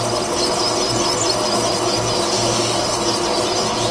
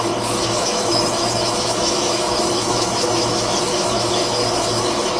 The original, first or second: first